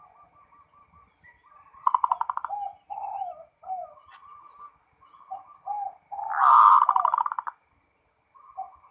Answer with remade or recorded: recorded